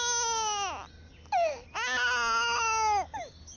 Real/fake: real